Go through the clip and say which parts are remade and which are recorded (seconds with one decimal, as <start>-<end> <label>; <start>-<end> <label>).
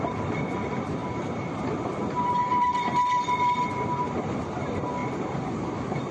0.0-6.1 recorded